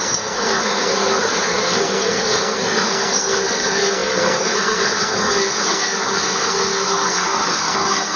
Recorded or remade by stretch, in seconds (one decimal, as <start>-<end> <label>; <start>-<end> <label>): 0.0-8.2 remade